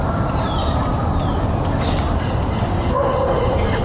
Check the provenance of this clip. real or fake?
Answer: real